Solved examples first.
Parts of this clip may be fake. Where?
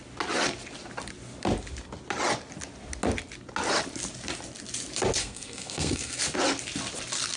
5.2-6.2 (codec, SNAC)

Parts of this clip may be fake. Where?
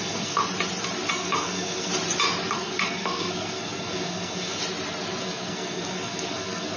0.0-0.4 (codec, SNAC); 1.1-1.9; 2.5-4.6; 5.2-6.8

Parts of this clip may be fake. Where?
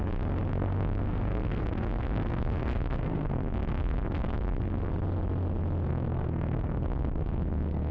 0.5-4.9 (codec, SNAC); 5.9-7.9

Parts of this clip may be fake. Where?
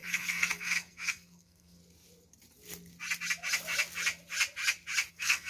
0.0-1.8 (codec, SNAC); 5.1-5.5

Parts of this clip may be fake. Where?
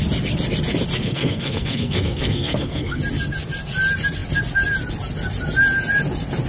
1.0-3.0 (codec, SNAC)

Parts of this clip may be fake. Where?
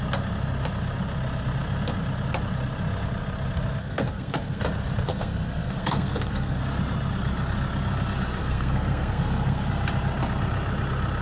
3.8-4.6 (codec, SNAC); 5.1-6.6; 8.4-9.7